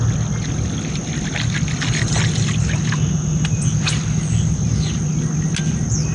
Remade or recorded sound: recorded